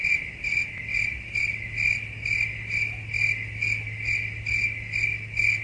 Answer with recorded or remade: recorded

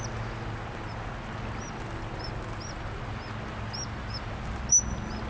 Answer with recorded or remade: recorded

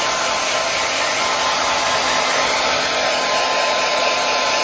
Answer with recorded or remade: recorded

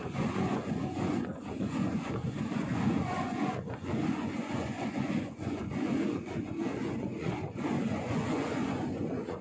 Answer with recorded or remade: remade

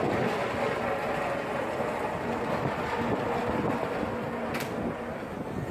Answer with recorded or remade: recorded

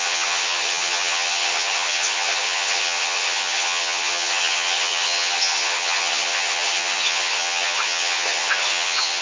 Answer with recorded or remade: remade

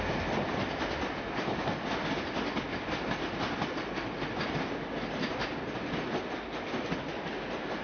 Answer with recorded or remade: recorded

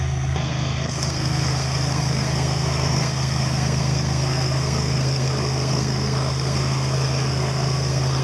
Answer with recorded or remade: remade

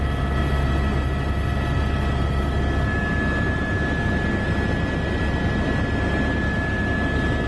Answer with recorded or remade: recorded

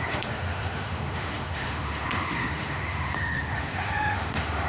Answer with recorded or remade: remade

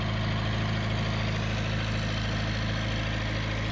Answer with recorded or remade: recorded